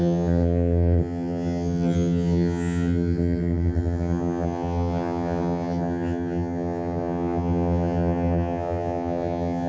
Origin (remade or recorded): remade